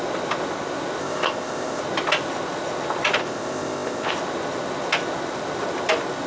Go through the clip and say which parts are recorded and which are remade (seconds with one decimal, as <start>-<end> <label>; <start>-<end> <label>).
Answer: 0.0-1.0 recorded; 1.0-1.8 remade; 1.8-3.2 recorded; 3.2-4.1 remade; 4.1-6.3 recorded